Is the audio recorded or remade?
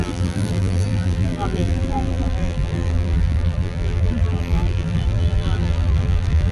remade